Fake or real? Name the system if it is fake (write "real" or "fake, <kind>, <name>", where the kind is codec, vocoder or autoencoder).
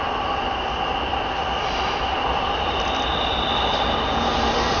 real